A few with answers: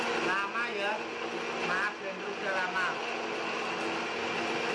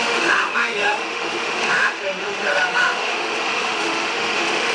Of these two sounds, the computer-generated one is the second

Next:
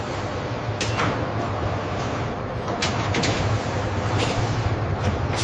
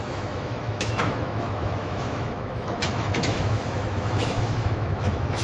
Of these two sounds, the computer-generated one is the second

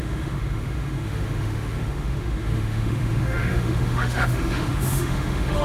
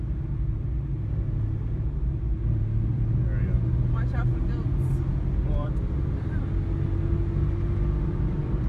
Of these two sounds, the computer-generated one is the first